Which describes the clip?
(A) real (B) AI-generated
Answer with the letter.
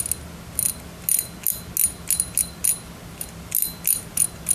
A